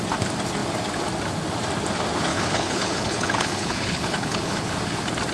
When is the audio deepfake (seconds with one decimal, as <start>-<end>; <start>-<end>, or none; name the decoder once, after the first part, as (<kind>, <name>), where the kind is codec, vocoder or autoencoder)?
2.3-4.7 (codec, HILCodec)